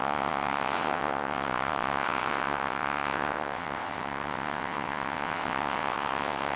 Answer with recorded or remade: remade